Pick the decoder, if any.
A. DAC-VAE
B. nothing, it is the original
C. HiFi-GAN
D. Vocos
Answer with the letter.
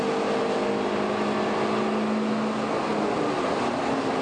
B